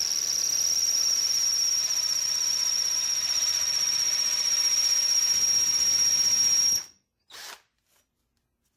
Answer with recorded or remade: recorded